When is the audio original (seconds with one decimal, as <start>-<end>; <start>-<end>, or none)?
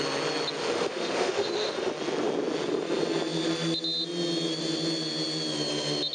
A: 0.0-0.6; 1.9-6.1